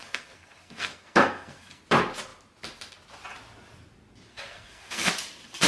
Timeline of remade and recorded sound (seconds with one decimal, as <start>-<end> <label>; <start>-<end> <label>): 0.0-1.8 remade; 1.8-4.3 recorded; 4.3-5.1 remade; 5.1-5.7 recorded

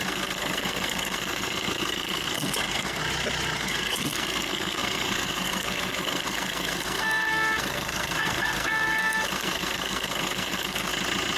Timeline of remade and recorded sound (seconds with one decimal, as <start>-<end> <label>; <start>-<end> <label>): 0.0-3.0 remade; 3.0-3.6 recorded; 3.6-10.9 remade; 10.9-11.4 recorded

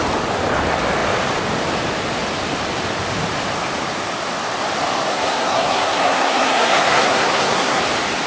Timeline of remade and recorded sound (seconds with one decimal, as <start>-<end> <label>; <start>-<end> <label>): 0.0-5.1 recorded; 5.1-7.8 remade; 7.8-8.3 recorded

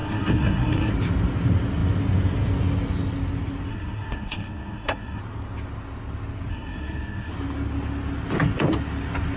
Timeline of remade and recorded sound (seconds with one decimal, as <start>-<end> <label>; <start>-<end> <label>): 0.0-0.9 remade; 0.9-3.7 recorded; 3.7-5.2 remade; 5.2-6.5 recorded; 6.5-7.3 remade; 7.3-9.4 recorded

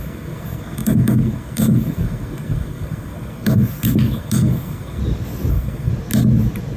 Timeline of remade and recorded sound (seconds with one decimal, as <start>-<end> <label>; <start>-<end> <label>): 0.0-5.0 remade; 5.0-5.5 recorded; 5.5-5.9 remade; 5.9-6.8 recorded

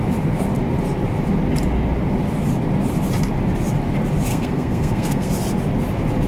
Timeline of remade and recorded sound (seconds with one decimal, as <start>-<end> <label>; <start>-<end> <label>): 0.0-4.3 recorded; 4.3-5.3 remade; 5.3-6.3 recorded